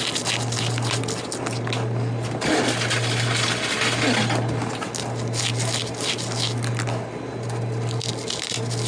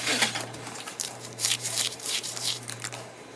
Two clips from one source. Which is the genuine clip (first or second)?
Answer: first